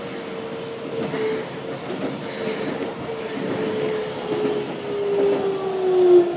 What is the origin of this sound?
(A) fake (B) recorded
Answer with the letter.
B